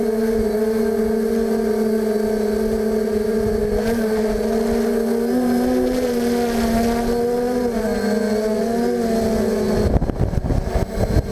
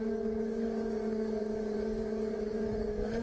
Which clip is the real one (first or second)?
first